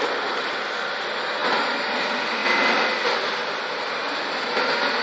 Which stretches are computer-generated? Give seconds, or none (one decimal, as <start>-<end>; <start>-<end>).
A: none